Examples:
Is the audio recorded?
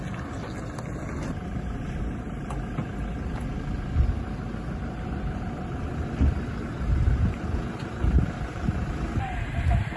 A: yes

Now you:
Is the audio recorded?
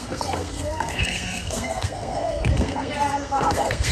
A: no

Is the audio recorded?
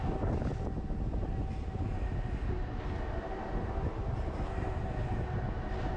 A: yes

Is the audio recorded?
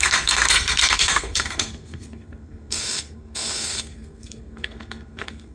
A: no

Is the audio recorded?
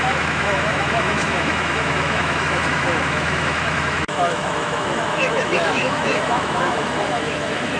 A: no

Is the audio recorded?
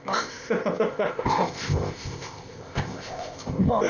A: no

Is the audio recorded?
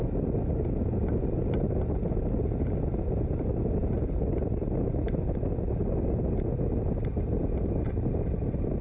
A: yes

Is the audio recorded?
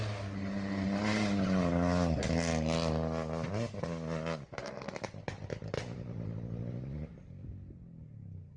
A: yes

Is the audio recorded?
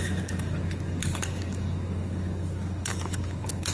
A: no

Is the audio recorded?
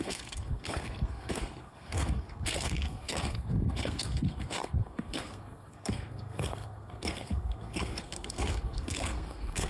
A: no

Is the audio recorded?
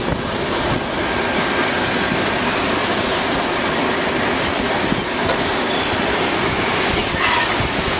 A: yes